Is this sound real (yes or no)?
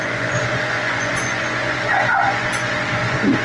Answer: no